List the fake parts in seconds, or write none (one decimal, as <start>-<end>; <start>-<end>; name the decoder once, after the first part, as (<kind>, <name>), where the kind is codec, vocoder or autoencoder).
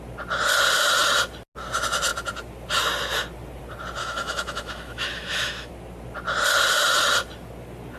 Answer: 4.0-5.7 (autoencoder, DAC-VAE)